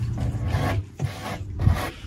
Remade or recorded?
recorded